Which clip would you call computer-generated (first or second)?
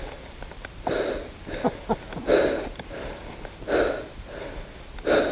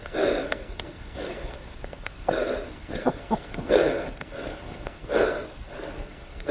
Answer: second